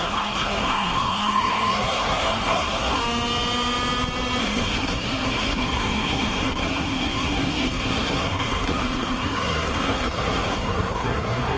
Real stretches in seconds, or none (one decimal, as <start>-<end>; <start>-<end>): 3.0-4.4